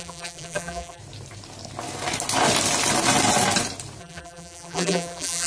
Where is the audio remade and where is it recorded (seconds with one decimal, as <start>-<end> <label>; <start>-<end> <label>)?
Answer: 0.0-1.0 remade; 1.0-4.0 recorded; 4.0-5.5 remade